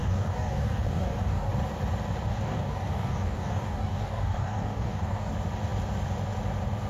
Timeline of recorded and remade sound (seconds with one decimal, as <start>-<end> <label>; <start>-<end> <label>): 0.0-1.5 remade; 1.5-2.3 recorded; 2.3-5.3 remade; 5.3-6.9 recorded